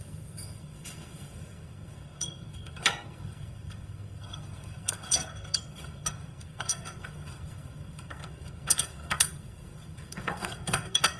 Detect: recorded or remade remade